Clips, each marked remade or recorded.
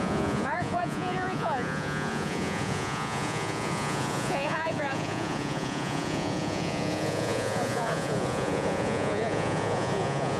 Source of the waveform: remade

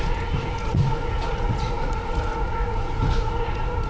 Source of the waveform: remade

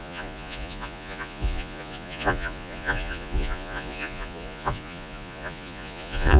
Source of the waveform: remade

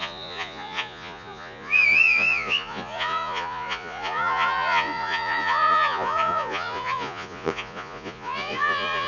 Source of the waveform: remade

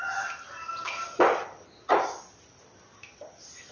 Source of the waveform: recorded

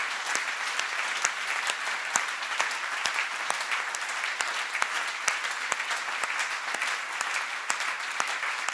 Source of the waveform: recorded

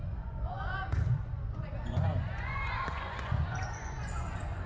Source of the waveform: remade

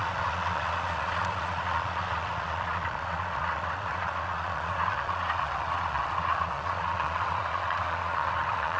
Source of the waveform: remade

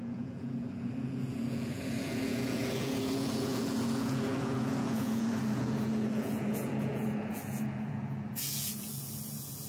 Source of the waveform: remade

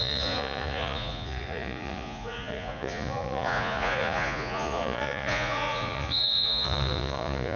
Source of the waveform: remade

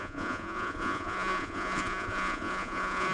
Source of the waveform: remade